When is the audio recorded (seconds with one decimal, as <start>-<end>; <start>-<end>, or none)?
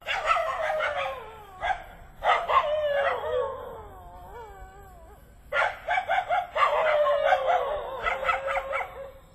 0.0-0.4; 1.4-9.3